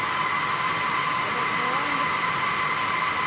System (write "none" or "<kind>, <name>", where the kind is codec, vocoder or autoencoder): none